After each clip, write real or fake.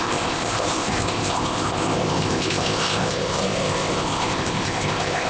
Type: fake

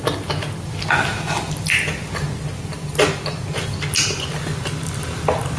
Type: real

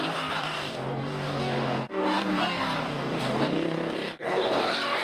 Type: fake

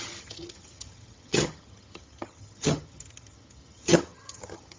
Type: fake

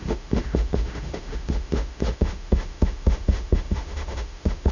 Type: fake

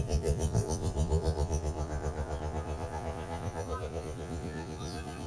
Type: fake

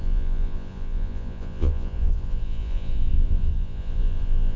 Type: fake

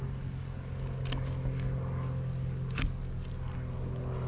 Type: real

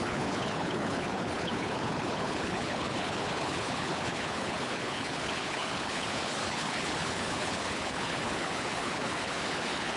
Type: fake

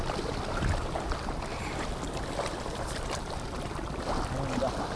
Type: real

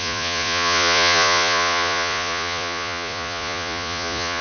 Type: fake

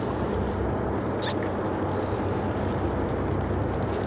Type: real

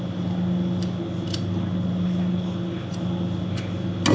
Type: real